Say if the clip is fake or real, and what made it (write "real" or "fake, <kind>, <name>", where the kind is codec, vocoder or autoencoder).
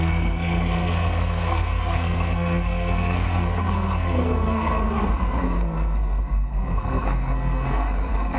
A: fake, codec, SNAC